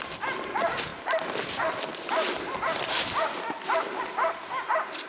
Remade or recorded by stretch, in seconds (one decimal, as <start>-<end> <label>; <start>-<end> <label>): 0.0-5.1 recorded